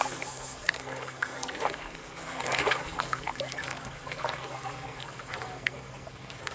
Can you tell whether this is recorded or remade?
remade